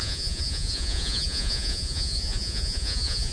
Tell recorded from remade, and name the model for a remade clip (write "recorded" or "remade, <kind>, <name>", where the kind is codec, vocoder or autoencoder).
remade, vocoder, Vocos